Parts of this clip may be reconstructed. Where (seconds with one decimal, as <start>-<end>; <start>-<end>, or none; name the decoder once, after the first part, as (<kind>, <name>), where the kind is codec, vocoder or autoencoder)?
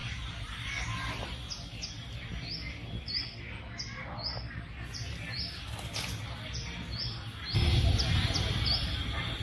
0.0-0.7 (vocoder, BigVGAN v2)